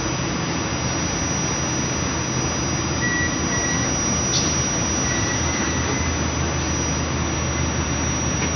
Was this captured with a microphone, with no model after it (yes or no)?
yes